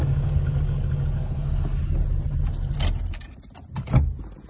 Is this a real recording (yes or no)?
yes